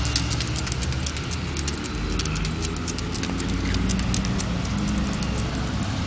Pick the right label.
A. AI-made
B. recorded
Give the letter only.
B